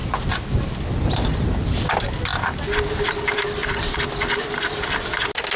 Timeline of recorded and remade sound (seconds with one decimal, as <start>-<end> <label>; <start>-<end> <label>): 0.0-5.6 recorded